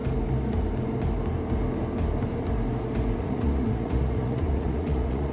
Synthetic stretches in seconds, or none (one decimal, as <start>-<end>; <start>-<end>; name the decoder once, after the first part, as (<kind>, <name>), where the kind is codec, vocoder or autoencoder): 3.2-5.3 (vocoder, Vocos)